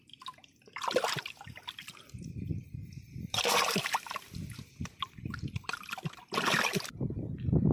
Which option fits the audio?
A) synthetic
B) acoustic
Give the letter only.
A